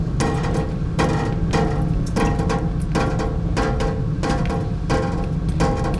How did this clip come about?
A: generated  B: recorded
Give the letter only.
B